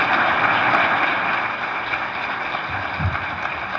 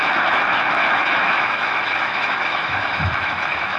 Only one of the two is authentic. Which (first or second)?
first